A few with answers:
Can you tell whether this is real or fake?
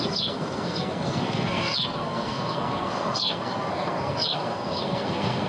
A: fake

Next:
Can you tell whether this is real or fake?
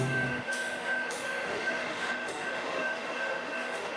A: fake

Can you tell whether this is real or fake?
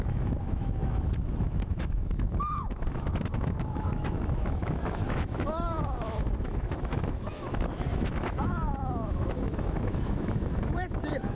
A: fake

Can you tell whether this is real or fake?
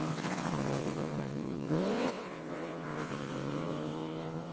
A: fake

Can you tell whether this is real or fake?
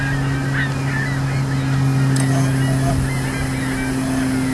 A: real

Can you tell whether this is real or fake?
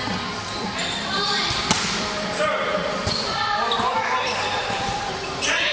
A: fake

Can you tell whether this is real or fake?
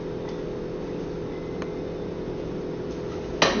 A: real